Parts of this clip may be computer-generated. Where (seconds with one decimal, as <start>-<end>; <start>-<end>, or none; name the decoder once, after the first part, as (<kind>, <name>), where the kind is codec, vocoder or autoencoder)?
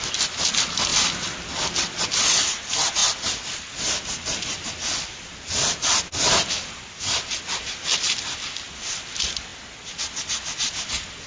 none